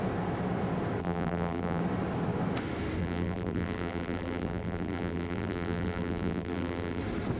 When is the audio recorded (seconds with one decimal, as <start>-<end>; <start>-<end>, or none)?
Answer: 0.0-1.0; 1.8-3.0; 7.0-7.4